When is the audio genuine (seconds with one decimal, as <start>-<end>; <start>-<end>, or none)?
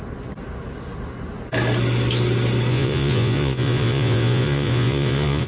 0.0-2.7